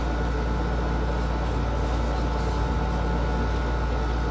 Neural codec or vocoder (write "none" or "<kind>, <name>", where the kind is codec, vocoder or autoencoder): none